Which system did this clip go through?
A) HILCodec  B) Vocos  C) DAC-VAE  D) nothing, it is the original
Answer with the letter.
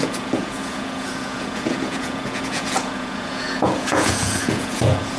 B